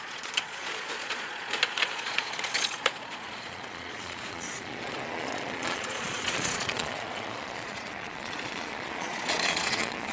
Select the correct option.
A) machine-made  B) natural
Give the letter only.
A